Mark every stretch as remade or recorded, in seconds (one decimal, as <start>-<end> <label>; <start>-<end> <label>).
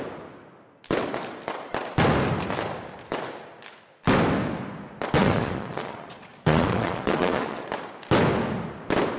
0.0-5.2 recorded; 5.2-7.7 remade; 7.7-9.2 recorded